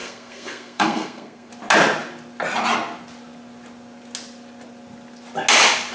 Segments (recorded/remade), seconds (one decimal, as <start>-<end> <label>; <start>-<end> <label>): 0.0-1.5 remade; 1.5-5.9 recorded